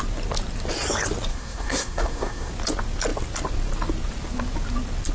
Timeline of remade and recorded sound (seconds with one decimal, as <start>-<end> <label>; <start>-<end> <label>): 0.0-1.3 recorded; 1.3-2.5 remade; 2.5-5.1 recorded